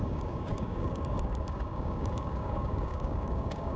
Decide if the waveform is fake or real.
fake